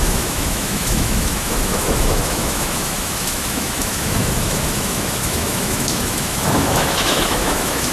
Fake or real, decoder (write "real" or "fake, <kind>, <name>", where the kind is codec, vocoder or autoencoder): fake, autoencoder, DAC-VAE